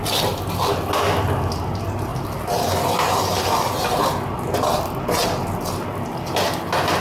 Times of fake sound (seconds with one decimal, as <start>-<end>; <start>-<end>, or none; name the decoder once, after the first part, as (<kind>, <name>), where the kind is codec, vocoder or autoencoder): none